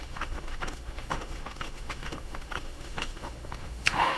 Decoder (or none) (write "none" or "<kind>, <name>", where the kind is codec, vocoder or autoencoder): autoencoder, DAC-VAE